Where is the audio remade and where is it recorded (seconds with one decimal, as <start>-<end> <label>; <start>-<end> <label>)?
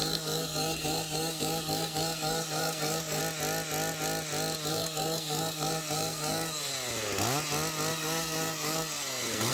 0.0-3.2 remade; 3.2-4.7 recorded; 4.7-6.7 remade; 6.7-7.9 recorded; 7.9-9.5 remade